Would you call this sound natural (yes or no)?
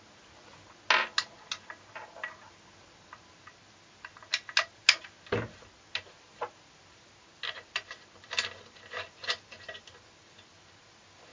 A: yes